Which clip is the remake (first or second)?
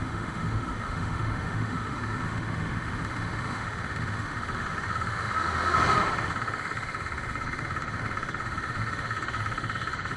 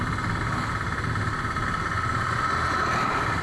first